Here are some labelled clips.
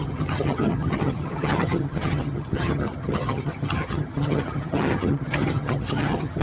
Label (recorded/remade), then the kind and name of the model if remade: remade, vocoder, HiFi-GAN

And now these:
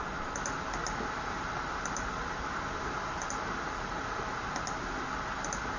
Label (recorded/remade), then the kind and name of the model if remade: recorded